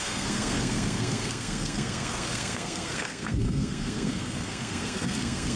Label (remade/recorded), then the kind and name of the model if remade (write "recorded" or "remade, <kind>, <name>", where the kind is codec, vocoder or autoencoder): remade, codec, SNAC